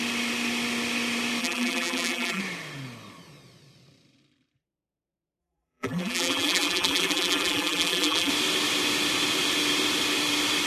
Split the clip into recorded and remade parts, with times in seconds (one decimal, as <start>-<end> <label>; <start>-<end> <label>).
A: 0.0-1.4 recorded; 1.4-2.4 remade; 2.4-5.4 recorded; 5.4-8.3 remade; 8.3-10.7 recorded